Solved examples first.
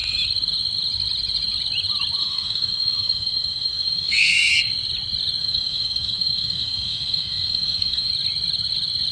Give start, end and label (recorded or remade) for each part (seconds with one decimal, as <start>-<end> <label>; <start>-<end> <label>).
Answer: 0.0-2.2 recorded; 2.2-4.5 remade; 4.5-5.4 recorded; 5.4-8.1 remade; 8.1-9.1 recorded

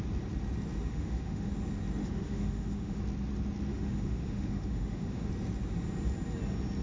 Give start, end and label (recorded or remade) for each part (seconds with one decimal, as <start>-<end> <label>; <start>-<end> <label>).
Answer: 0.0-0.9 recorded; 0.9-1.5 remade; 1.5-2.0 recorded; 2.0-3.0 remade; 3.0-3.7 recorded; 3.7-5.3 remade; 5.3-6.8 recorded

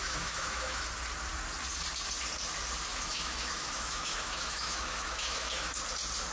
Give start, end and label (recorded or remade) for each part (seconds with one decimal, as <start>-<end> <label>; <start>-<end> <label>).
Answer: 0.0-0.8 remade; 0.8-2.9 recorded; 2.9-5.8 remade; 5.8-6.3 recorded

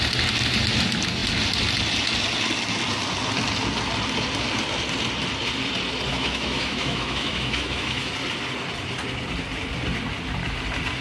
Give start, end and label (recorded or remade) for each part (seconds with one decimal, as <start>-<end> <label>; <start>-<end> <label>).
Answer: 0.0-6.1 recorded; 6.1-8.1 remade; 8.1-11.0 recorded

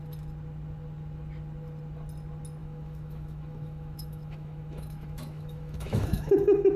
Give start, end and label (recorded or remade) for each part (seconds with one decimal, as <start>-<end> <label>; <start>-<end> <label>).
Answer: 0.0-2.6 recorded; 2.6-6.8 remade

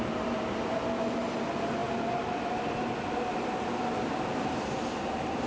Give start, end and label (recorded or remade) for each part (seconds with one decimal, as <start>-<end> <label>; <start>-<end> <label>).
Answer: 0.0-5.5 recorded